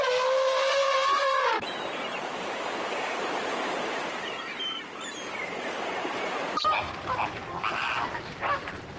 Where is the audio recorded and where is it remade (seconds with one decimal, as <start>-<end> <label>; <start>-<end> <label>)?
0.0-7.4 remade; 7.4-8.0 recorded; 8.0-9.0 remade